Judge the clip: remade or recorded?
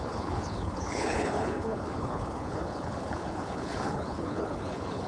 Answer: remade